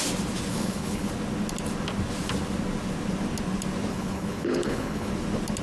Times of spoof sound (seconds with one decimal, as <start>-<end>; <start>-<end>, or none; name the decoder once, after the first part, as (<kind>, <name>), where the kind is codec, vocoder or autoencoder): 0.5-1.1 (codec, HILCodec); 3.9-5.1